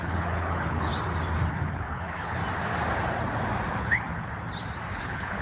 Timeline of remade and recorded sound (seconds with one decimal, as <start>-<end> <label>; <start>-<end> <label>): 0.0-0.9 remade; 0.9-1.5 recorded; 1.5-2.4 remade; 2.4-3.7 recorded; 3.7-4.3 remade; 4.3-5.0 recorded; 5.0-5.4 remade